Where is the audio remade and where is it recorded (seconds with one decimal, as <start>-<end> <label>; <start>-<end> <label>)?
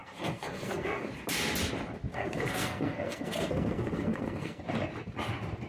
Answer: 0.0-1.1 remade; 1.1-2.1 recorded; 2.1-4.6 remade; 4.6-5.7 recorded